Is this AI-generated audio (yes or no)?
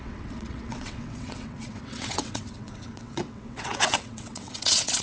yes